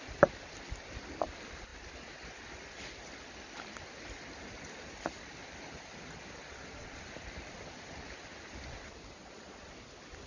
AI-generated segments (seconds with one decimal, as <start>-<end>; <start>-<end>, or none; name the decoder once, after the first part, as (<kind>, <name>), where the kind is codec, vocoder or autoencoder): 6.4-7.0 (vocoder, Vocos); 9.2-9.7